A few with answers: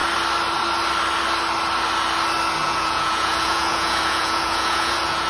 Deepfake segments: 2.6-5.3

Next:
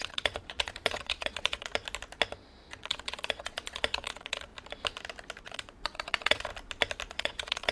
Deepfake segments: 0.0-1.7; 2.7-4.5; 5.4-6.5; 7.1-7.7

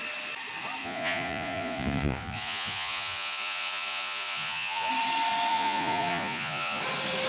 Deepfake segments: 0.8-4.9; 5.5-6.8

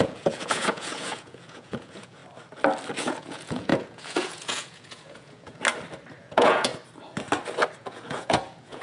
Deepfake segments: 0.0-2.2; 3.0-5.6; 6.2-6.7; 7.8-8.8

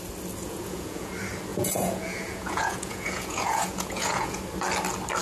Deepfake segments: 0.4-1.1; 1.5-4.4

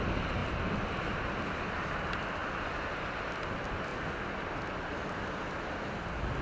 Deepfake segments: none